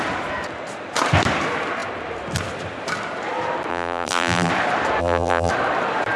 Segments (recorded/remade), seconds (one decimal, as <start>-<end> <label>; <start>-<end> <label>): 0.0-3.7 recorded; 3.7-4.5 remade; 4.5-5.0 recorded; 5.0-5.5 remade; 5.5-6.2 recorded